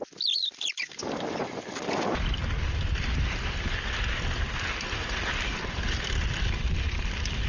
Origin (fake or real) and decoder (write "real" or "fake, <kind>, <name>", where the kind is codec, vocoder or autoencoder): real